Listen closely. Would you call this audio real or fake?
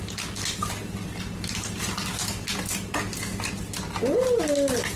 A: real